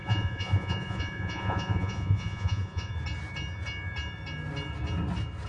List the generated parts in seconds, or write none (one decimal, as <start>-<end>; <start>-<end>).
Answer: 0.0-2.9